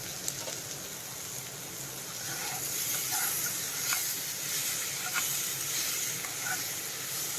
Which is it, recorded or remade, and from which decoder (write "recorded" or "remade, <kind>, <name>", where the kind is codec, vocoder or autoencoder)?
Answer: recorded